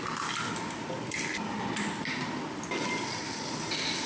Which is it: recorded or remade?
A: recorded